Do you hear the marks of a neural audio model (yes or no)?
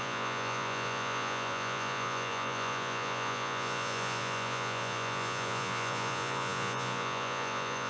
yes